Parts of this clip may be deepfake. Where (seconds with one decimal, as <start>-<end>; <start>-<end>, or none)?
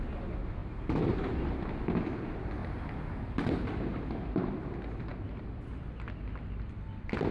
0.6-1.7; 2.6-4.3